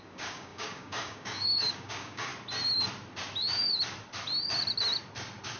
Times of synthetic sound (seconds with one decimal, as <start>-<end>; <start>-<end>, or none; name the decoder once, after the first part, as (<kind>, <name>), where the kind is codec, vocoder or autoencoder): 0.0-2.3 (codec, DAC); 3.4-3.8